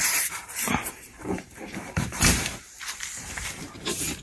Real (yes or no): no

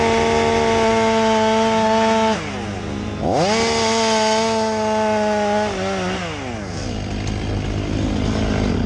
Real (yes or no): yes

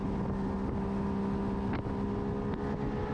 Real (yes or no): yes